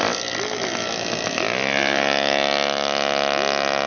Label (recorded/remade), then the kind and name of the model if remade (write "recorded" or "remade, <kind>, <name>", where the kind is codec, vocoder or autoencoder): recorded